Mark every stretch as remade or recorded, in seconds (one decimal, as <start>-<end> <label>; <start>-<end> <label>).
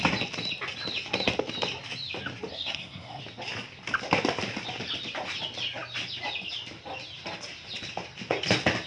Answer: 0.0-2.5 recorded; 2.5-3.2 remade; 3.2-8.9 recorded